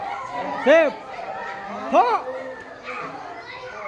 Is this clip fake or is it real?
real